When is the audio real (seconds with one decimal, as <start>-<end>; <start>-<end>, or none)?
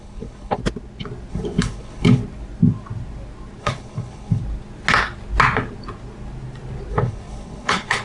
0.6-1.3; 2.2-3.6; 4.4-6.9